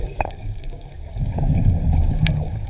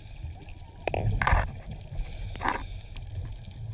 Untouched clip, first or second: second